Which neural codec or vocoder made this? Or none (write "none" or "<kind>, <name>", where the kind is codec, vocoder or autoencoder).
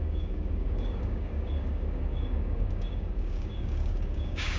codec, DAC